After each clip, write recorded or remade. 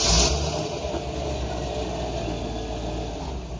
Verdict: recorded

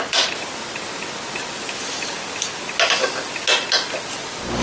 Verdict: recorded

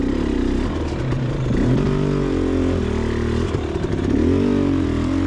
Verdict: recorded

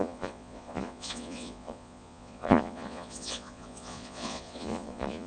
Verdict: remade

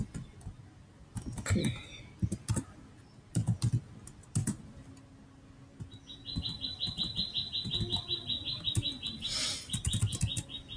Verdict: recorded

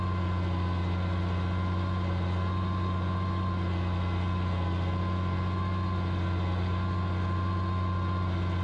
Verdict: recorded